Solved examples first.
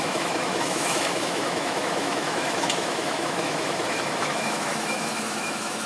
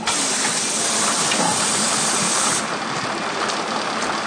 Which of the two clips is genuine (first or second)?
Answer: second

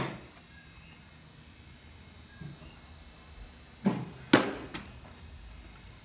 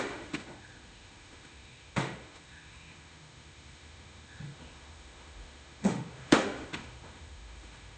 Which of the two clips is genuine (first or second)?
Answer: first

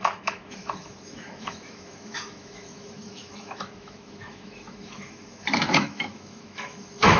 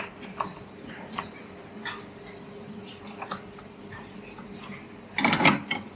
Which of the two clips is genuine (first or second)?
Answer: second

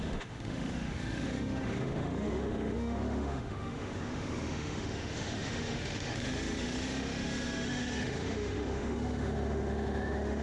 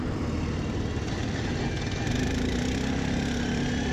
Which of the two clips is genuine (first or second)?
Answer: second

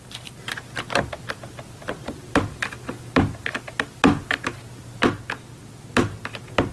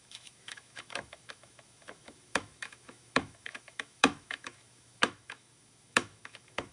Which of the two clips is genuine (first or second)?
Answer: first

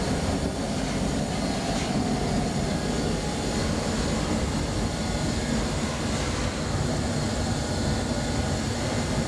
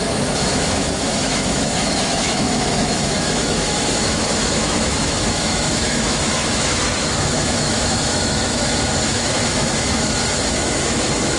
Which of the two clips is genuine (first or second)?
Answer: first